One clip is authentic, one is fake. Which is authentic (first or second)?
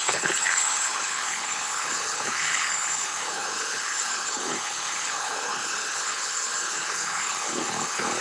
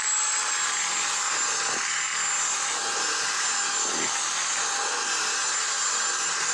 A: second